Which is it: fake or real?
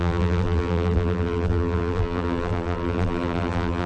fake